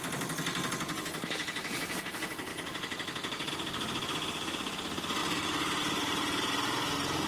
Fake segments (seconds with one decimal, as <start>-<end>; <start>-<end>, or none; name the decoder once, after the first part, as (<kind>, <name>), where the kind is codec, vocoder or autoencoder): 2.5-3.5 (vocoder, BigVGAN v2); 5.2-5.8